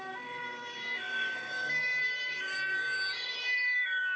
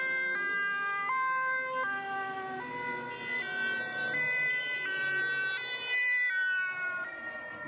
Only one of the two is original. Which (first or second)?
second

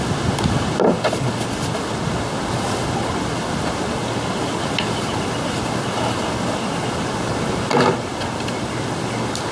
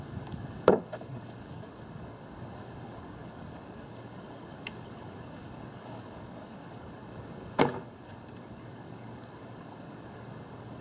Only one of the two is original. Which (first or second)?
first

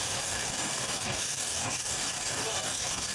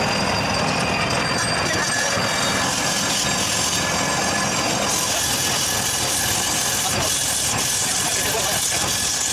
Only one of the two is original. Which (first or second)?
second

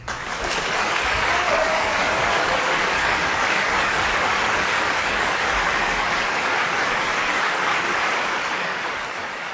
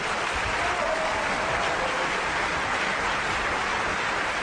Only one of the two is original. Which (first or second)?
second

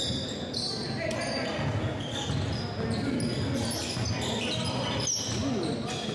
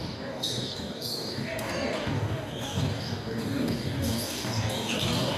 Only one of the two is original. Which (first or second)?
first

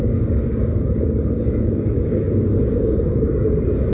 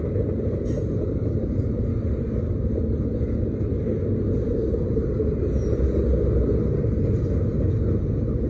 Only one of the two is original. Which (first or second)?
second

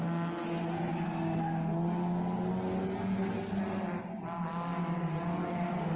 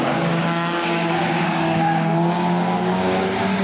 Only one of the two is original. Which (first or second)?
first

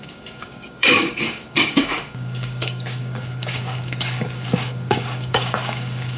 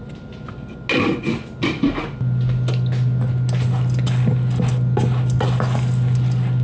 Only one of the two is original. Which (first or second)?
second